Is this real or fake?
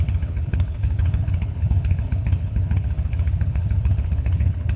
fake